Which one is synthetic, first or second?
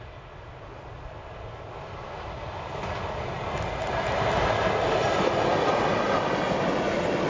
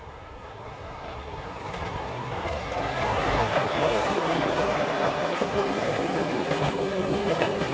second